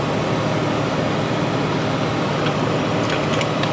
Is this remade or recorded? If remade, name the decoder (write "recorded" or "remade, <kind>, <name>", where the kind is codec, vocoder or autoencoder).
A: recorded